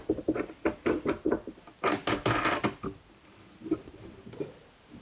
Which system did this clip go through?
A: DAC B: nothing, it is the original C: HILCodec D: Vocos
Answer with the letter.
B